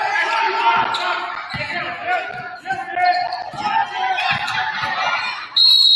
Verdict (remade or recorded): recorded